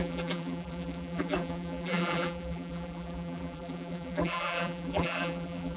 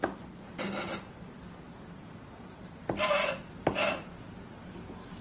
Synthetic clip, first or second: first